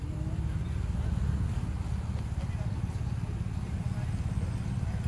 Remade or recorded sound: recorded